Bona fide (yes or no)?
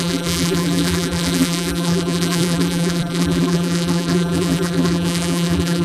no